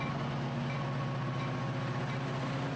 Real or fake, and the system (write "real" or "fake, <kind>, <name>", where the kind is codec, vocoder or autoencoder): real